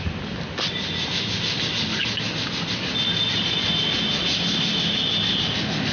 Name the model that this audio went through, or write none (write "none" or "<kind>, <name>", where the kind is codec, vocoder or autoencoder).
none